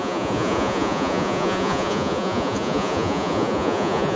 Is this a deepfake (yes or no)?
yes